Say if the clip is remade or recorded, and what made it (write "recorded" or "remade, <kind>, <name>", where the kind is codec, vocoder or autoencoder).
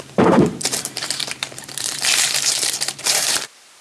remade, vocoder, BigVGAN v2